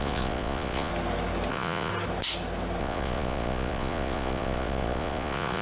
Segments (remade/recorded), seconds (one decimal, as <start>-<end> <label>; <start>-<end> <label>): 0.0-0.9 remade; 0.9-1.5 recorded; 1.5-1.9 remade; 1.9-2.8 recorded; 2.8-5.6 remade